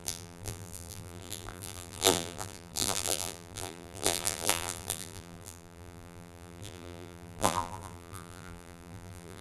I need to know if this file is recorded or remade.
remade